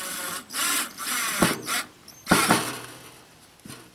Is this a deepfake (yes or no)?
yes